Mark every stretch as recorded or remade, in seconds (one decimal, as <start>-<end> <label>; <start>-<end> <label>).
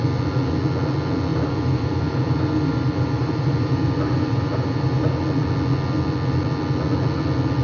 0.0-1.3 recorded; 1.3-5.2 remade; 5.2-7.6 recorded